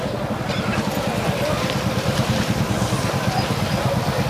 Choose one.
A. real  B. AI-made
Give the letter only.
A